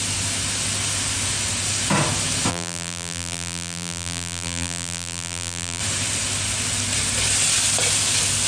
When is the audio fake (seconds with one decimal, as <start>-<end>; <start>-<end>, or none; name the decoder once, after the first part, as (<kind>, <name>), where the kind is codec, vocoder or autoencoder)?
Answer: 2.5-5.8 (vocoder, BigVGAN v2)